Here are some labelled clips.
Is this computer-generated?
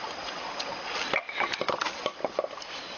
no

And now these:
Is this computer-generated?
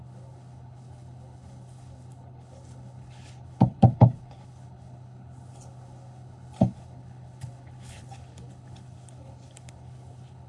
yes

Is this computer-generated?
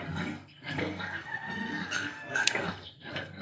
yes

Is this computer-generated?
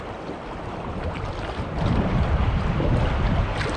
no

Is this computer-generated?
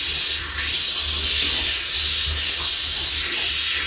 no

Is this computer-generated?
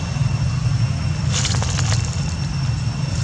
no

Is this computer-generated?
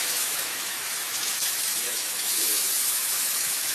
yes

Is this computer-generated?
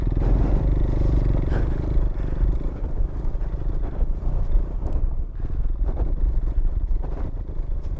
yes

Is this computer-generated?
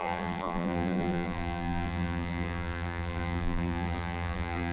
yes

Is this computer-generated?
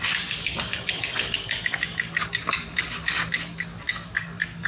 yes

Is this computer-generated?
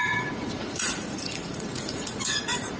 yes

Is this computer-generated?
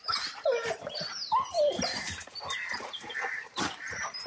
yes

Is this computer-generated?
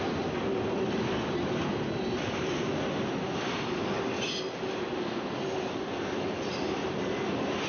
no